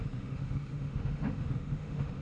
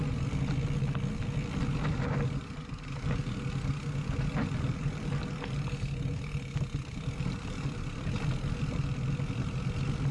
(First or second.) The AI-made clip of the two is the first